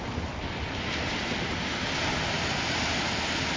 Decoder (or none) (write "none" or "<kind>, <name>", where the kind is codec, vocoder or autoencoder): none